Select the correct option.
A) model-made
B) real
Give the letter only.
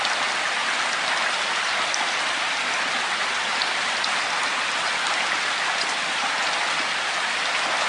B